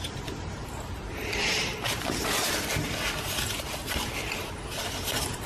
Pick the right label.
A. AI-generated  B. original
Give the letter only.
B